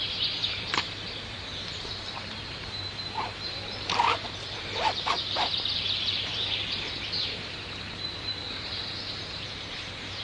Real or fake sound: fake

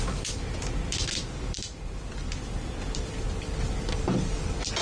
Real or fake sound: real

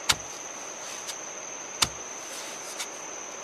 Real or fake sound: real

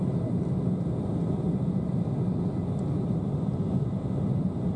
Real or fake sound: real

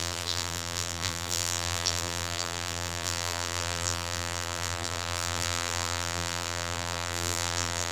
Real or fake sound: fake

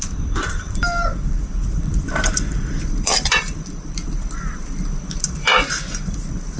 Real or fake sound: fake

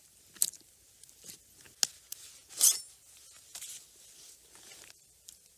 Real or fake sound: real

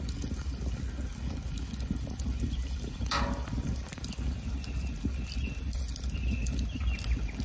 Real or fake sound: real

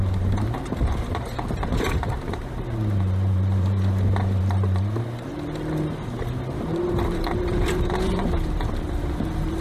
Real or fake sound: fake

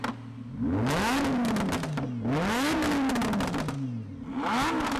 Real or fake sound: real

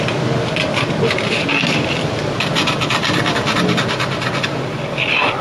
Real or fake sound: real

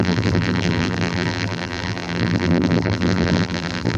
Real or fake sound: fake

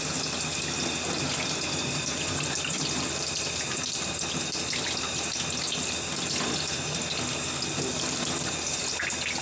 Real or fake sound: real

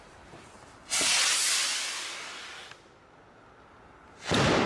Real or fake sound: real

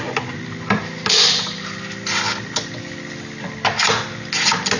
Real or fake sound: real